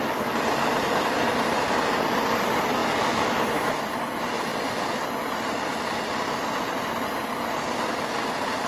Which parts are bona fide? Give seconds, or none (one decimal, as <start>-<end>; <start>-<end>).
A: 0.0-8.7